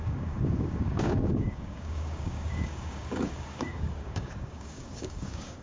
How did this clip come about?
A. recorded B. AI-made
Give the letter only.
B